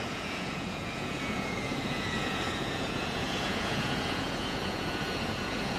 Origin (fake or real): fake